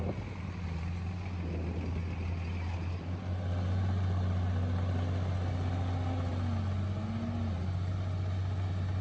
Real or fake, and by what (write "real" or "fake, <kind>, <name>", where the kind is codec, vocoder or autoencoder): real